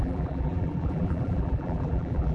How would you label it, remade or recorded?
remade